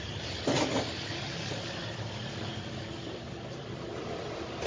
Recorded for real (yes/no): yes